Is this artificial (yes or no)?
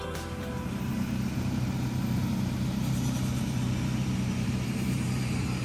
yes